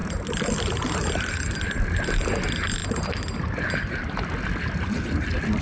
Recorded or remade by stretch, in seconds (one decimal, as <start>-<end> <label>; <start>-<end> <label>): 0.0-5.6 recorded